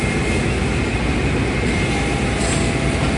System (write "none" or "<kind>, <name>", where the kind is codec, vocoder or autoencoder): none